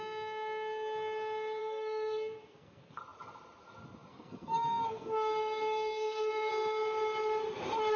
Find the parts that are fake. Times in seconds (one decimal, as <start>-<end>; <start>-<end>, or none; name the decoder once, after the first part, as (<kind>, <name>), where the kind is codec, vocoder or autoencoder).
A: 1.6-3.0 (codec, SNAC); 4.1-6.5